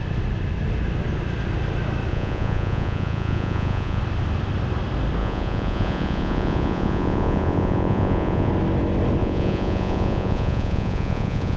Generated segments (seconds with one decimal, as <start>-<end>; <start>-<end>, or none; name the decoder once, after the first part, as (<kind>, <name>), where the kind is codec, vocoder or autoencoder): 2.1-4.0 (vocoder, Vocos); 5.2-8.5; 9.2-11.6